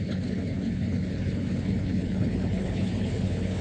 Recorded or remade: remade